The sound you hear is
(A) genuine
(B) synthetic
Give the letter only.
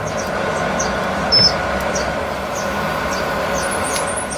B